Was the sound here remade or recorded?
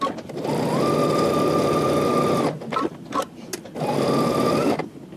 recorded